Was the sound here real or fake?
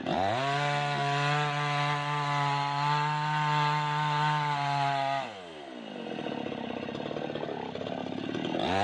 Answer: real